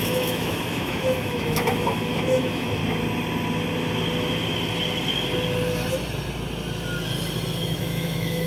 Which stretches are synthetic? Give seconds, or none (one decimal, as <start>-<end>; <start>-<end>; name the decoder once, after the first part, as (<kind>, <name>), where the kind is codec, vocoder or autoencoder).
0.0-2.8 (autoencoder, DAC-VAE); 7.7-8.5